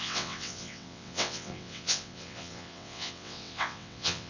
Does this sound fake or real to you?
fake